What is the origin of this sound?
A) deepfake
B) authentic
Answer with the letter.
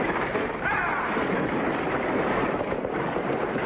B